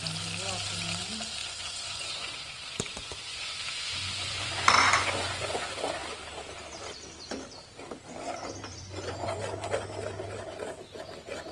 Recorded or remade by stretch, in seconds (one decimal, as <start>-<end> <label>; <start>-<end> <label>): 0.0-1.4 recorded; 1.4-5.6 remade; 5.6-8.7 recorded; 8.7-9.4 remade; 9.4-11.5 recorded

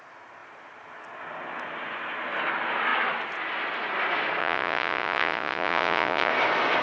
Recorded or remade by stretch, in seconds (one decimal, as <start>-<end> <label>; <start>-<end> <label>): 0.0-4.4 recorded; 4.4-6.3 remade; 6.3-6.8 recorded

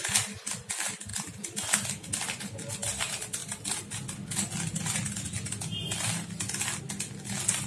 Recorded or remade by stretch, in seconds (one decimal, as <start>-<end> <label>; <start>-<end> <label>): 0.0-7.7 recorded

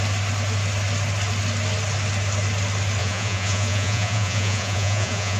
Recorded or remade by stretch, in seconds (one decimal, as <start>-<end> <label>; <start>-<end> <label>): 0.0-3.0 recorded; 3.0-5.4 remade

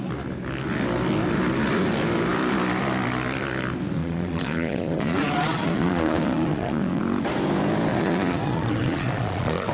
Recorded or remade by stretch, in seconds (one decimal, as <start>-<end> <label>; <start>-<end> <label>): 0.0-4.0 recorded; 4.0-7.0 remade; 7.0-7.9 recorded; 7.9-9.7 remade

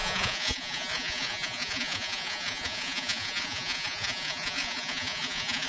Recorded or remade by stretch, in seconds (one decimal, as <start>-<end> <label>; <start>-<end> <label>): 0.0-5.7 remade

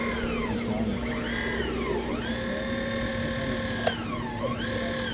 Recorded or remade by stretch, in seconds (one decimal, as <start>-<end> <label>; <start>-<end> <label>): 0.0-5.1 recorded

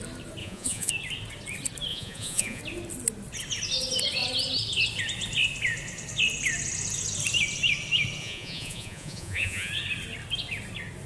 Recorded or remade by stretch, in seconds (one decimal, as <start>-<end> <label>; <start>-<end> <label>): 0.0-0.4 recorded; 0.4-0.9 remade; 0.9-1.9 recorded; 1.9-2.6 remade; 2.6-8.2 recorded; 8.2-9.7 remade; 9.7-11.1 recorded